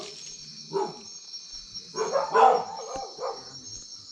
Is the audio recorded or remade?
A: recorded